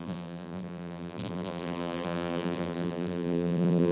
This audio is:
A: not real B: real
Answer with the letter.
A